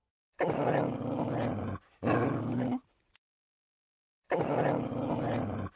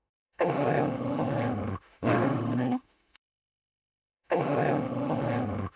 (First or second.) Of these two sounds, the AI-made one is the second